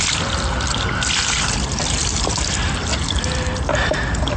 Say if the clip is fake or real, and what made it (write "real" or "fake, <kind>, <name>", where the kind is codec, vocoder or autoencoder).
real